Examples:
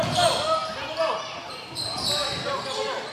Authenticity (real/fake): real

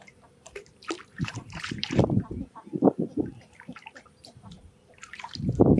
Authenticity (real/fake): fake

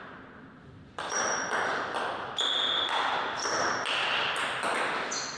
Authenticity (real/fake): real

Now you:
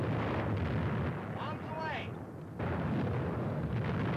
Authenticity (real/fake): real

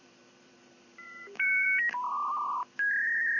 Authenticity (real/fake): fake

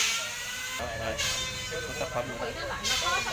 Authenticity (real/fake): fake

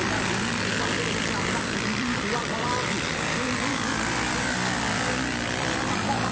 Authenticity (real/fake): fake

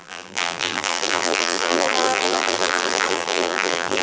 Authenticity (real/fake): fake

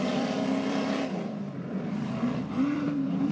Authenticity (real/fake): fake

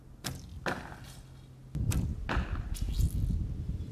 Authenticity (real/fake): real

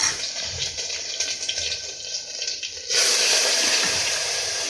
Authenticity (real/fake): fake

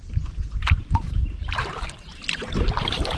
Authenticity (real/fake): fake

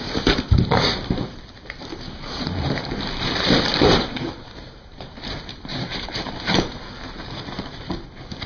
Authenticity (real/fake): fake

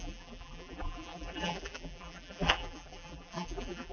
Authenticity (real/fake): fake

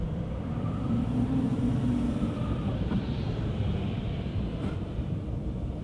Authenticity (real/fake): fake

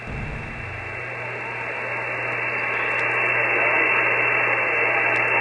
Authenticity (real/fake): real